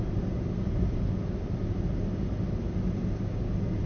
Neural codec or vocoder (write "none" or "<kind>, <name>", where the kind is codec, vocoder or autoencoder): none